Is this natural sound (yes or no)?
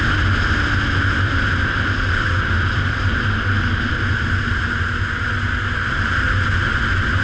yes